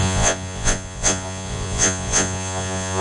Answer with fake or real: fake